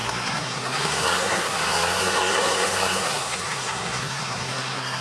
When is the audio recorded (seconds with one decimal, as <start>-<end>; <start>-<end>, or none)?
none